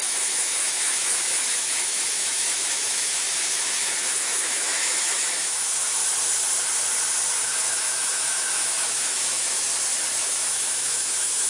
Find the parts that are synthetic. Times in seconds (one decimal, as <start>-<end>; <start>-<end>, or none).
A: 0.0-6.0; 7.3-9.7; 10.2-11.5